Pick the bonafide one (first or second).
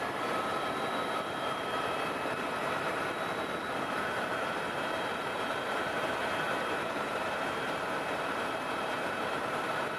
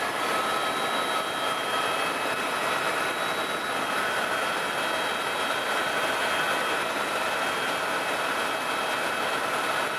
second